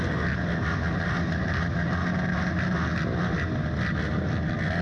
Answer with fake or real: real